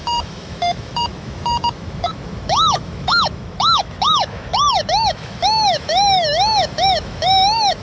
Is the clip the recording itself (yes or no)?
no